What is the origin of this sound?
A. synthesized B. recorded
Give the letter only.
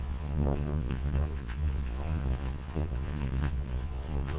A